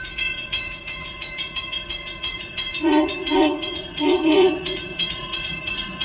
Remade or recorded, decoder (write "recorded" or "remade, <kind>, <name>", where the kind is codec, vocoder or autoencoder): remade, vocoder, Vocos